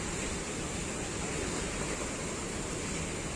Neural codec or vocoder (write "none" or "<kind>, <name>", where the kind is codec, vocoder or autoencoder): none